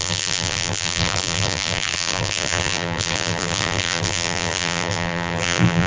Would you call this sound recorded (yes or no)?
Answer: no